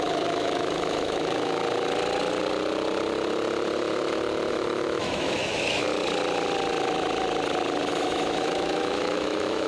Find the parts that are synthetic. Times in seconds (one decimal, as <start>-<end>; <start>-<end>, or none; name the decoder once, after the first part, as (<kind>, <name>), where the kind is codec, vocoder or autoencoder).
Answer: 0.0-1.6 (autoencoder, DAC-VAE); 4.5-5.9; 7.9-9.7